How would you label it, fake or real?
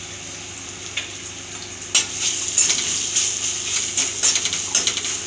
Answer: real